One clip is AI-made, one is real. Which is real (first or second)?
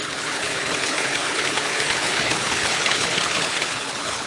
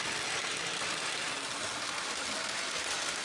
second